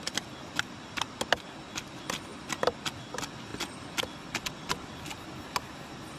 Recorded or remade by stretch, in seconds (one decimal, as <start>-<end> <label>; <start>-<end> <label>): 0.0-6.2 recorded